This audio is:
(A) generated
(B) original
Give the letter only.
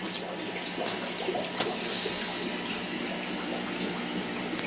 B